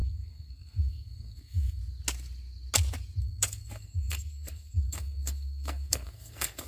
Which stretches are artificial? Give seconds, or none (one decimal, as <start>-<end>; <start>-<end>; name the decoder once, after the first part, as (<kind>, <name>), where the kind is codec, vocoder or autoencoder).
0.0-1.8 (codec, SNAC); 3.2-6.7